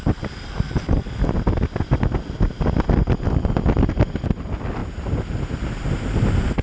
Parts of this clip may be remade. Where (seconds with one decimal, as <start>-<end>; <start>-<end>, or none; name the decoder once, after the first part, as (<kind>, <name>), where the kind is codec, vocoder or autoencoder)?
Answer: none